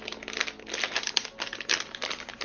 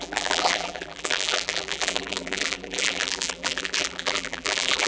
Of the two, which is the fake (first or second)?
second